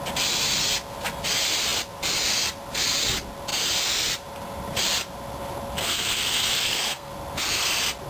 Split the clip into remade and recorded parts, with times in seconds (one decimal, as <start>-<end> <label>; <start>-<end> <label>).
0.0-5.8 recorded; 5.8-7.1 remade; 7.1-8.1 recorded